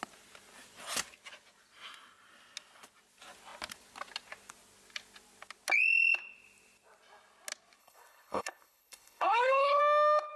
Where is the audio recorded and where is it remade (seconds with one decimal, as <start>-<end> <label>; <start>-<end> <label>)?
0.0-7.8 recorded; 7.8-9.8 remade; 9.8-10.4 recorded